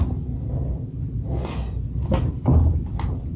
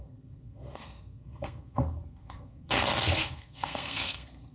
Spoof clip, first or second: second